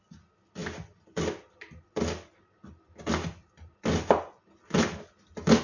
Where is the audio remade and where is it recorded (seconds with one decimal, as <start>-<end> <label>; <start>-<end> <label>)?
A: 0.0-5.6 recorded